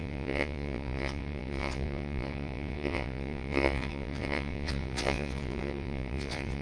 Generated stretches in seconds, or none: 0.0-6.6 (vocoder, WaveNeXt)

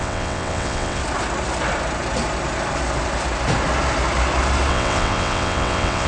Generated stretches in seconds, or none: 0.0-1.0 (vocoder, WaveNeXt); 4.7-6.1

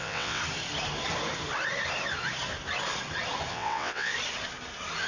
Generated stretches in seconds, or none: 0.0-0.4 (vocoder, WaveNeXt); 3.5-4.1

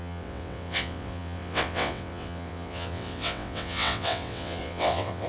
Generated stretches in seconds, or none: 0.0-5.3 (vocoder, WaveNeXt)